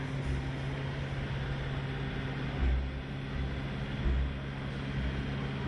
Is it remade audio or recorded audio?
recorded